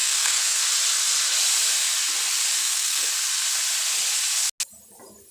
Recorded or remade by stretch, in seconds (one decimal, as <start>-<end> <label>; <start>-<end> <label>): 0.0-0.6 remade; 0.6-2.6 recorded; 2.6-3.1 remade; 3.1-5.3 recorded